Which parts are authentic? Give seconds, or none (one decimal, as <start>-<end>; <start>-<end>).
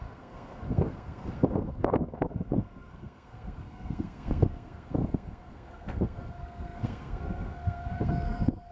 none